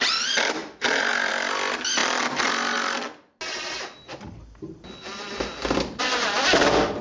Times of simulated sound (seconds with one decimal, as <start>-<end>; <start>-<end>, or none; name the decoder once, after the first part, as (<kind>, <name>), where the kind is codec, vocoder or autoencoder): none